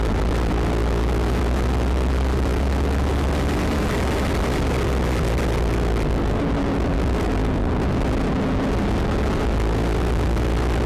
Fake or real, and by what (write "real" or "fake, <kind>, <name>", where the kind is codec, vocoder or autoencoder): real